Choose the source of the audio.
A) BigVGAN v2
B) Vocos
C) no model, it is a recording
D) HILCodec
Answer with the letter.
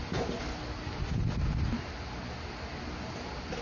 C